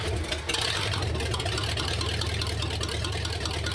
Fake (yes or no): no